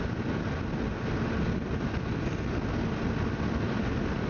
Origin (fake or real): real